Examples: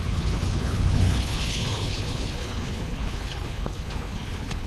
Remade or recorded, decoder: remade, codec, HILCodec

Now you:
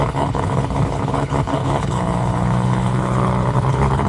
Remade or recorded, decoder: remade, codec, HILCodec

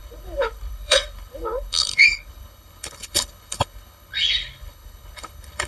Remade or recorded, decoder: remade, codec, HILCodec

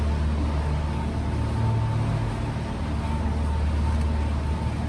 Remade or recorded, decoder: recorded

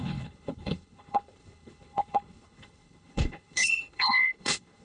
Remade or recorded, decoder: remade, codec, HILCodec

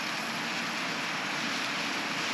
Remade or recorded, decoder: recorded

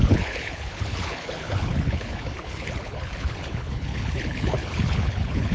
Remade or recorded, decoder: remade, codec, HILCodec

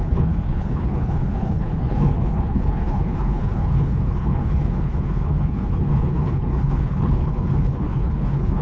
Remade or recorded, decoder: remade, codec, HILCodec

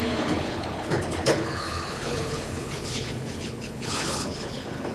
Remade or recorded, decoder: remade, codec, HILCodec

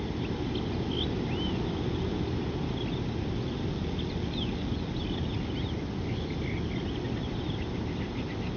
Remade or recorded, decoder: recorded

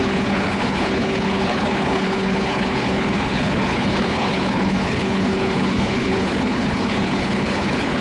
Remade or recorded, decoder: remade, codec, HILCodec